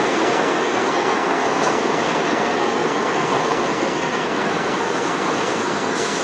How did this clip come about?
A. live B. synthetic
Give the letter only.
B